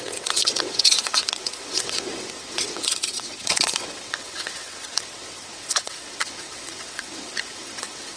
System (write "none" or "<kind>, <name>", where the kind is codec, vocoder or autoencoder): vocoder, WaveNeXt